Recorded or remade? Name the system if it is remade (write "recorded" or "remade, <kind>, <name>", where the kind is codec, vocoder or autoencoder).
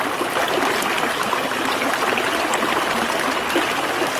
recorded